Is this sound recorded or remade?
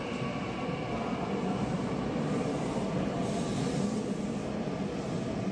recorded